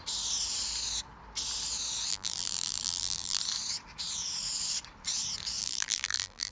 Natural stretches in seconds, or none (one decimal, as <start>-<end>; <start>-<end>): 0.0-2.1; 3.4-5.6